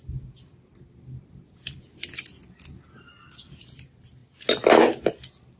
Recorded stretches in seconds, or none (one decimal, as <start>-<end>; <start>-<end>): 0.0-5.6